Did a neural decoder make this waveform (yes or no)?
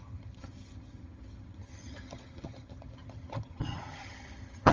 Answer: yes